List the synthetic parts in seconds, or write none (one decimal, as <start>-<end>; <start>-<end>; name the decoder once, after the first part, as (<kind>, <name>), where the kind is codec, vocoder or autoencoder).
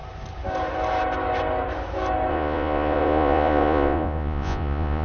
2.3-5.0 (vocoder, Vocos)